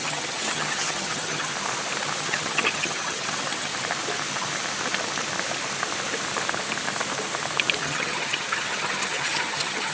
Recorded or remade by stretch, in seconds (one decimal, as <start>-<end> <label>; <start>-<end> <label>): 0.0-1.5 remade; 1.5-2.2 recorded; 2.2-3.7 remade; 3.7-7.8 recorded; 7.8-9.9 remade